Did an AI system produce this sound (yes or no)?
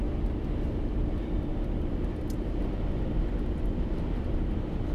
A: no